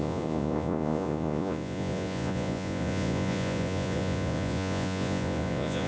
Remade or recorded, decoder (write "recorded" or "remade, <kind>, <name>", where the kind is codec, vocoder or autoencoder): remade, vocoder, Vocos